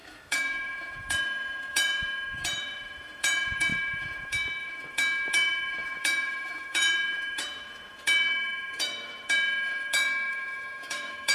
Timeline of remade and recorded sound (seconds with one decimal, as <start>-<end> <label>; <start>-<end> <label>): 0.0-11.3 remade